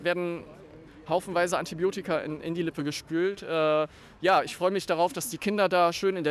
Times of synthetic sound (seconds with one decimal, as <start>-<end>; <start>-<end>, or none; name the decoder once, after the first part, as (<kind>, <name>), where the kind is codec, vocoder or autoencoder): 0.0-0.4 (autoencoder, DAC-VAE); 2.8-4.0; 4.6-6.3